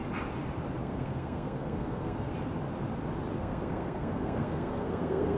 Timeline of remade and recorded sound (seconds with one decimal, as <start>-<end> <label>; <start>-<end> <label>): 0.0-0.8 recorded; 0.8-2.3 remade; 2.3-3.4 recorded; 3.4-5.4 remade